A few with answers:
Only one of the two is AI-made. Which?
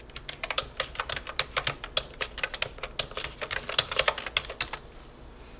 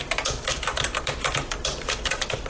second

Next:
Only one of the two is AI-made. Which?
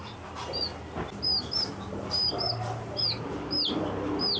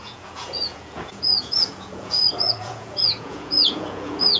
second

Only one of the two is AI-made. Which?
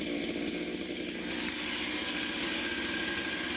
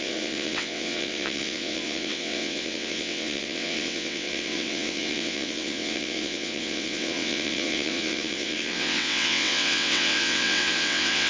second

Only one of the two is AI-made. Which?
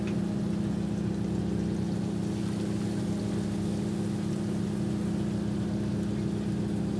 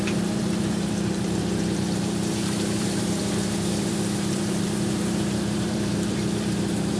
second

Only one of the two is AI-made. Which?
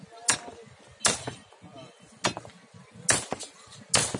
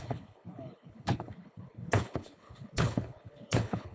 second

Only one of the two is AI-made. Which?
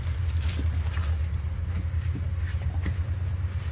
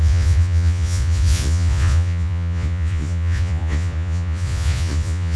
second